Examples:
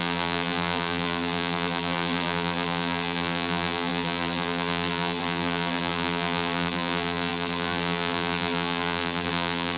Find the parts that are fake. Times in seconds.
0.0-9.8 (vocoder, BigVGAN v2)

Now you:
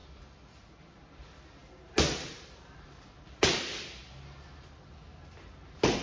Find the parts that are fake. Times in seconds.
none

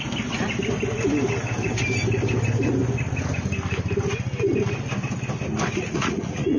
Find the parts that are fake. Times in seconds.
5.7-6.6 (vocoder, Vocos)